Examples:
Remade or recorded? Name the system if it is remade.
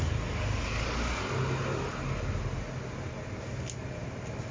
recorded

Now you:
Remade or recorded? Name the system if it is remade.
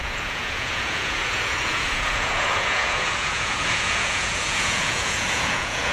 remade, vocoder, Vocos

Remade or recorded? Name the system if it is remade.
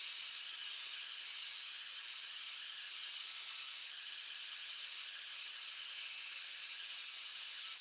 recorded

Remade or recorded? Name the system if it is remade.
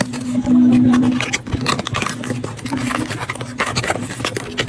recorded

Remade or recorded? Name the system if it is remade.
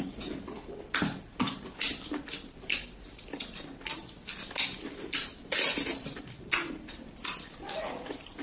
remade, vocoder, BigVGAN v2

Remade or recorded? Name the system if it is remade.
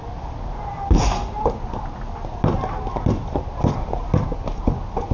recorded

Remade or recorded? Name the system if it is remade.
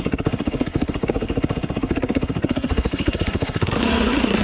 remade, codec, SNAC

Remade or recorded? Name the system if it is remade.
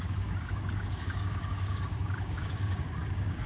remade, codec, DAC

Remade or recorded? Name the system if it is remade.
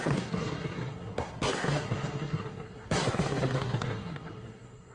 remade, codec, SNAC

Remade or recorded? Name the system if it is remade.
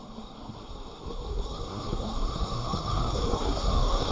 remade, codec, SNAC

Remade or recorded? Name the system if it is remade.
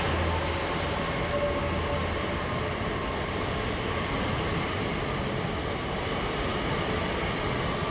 recorded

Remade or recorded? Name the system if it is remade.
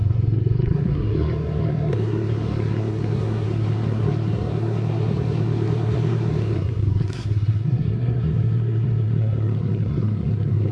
remade, codec, SNAC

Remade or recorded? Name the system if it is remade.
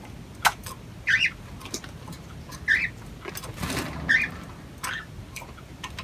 recorded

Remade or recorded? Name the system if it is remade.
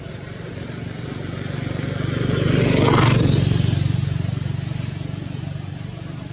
recorded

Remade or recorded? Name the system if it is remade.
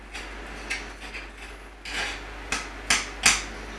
recorded